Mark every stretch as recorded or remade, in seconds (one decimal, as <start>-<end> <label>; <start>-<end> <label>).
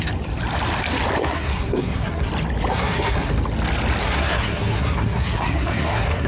0.0-1.2 recorded; 1.2-2.3 remade; 2.3-2.7 recorded; 2.7-3.3 remade; 3.3-4.0 recorded; 4.0-6.3 remade